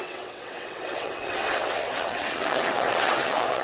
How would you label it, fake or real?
fake